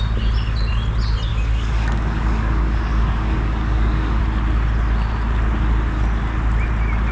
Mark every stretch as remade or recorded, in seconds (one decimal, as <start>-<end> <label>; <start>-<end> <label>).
0.0-1.3 recorded; 1.3-4.2 remade; 4.2-7.1 recorded